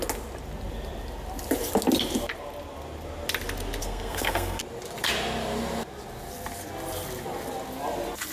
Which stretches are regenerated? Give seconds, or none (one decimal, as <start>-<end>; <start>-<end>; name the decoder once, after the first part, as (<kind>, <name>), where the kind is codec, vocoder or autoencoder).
3.8-4.6 (codec, SNAC)